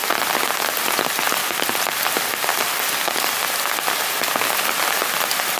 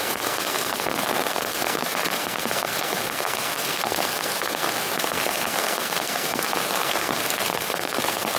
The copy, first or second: second